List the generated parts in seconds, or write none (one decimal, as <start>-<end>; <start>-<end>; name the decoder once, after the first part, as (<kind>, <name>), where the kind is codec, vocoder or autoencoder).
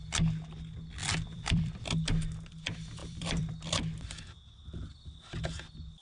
1.0-1.7 (vocoder, BigVGAN v2); 3.0-3.5